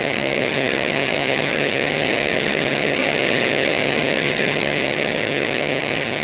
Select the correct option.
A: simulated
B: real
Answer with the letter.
A